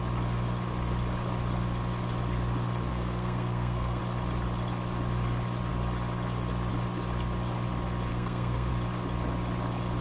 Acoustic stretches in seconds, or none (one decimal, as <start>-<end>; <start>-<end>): 0.0-2.9; 4.0-8.1; 8.7-10.0